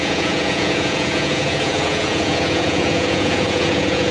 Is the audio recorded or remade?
remade